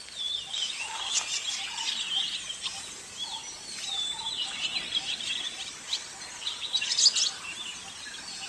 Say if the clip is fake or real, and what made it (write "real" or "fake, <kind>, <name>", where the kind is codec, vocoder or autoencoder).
real